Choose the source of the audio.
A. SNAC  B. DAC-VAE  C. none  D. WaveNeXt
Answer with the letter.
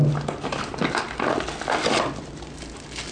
C